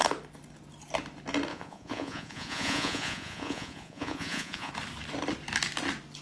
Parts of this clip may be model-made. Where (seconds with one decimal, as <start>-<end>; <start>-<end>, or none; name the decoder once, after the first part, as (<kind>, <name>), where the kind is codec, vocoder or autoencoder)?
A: 1.5-4.7 (vocoder, Vocos)